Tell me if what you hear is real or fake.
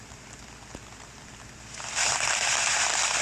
real